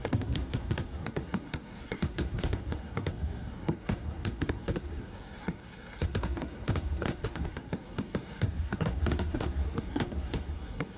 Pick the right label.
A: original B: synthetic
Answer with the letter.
B